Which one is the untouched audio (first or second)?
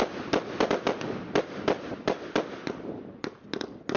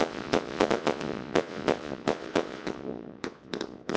first